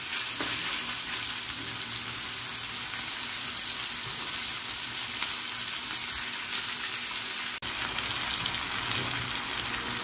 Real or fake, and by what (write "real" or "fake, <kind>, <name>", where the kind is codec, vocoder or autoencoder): real